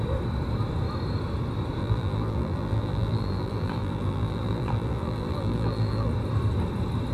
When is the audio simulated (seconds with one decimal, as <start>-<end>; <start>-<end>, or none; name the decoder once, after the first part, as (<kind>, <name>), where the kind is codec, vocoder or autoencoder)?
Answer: 1.8-6.1 (vocoder, BigVGAN v2)